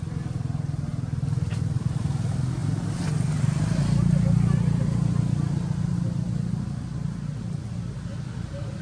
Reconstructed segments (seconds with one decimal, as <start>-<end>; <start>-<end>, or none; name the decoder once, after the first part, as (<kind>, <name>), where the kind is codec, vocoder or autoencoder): none